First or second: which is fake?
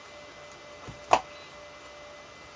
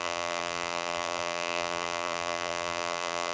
second